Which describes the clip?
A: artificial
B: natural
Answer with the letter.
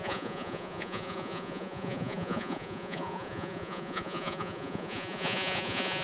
A